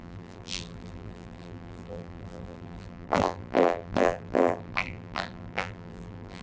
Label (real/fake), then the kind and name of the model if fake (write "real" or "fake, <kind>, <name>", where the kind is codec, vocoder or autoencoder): fake, vocoder, BigVGAN v2